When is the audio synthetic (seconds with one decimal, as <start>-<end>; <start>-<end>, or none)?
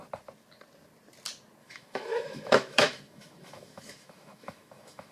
1.6-5.1